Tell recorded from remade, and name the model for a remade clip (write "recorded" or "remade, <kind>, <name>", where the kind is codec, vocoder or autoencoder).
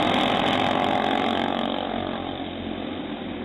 recorded